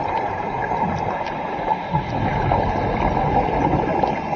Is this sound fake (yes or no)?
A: no